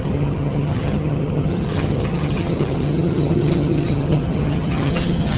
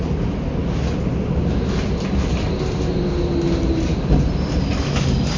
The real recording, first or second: second